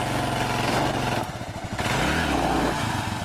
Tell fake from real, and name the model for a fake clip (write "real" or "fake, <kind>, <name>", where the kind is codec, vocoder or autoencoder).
real